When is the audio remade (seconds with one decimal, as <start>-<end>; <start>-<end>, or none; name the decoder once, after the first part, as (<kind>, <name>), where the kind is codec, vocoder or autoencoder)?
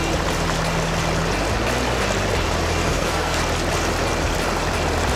2.8-3.4 (codec, SNAC)